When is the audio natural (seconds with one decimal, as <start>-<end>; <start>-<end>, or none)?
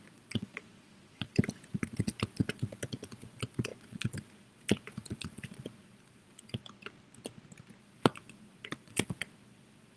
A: 6.6-7.8